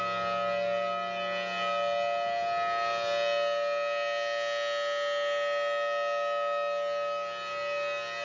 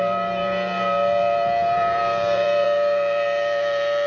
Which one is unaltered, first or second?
first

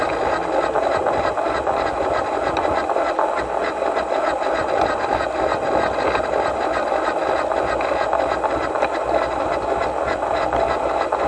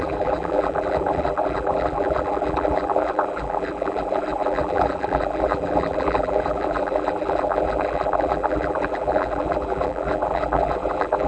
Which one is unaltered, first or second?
first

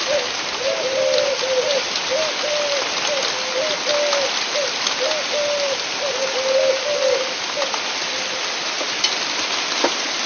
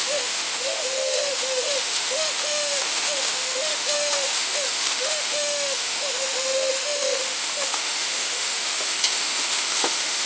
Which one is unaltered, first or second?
first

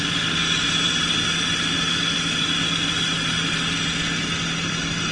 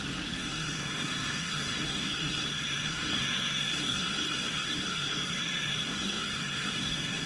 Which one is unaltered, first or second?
first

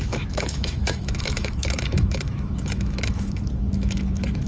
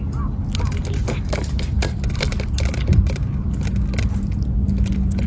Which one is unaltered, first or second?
second